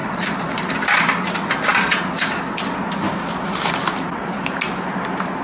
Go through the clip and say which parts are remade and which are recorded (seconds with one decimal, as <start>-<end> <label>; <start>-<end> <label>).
0.0-0.6 remade; 0.6-5.4 recorded